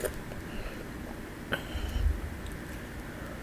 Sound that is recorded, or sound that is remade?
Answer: recorded